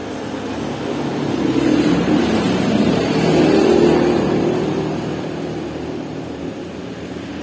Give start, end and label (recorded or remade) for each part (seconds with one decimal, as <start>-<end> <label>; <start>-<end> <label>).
0.0-1.3 recorded; 1.3-7.4 remade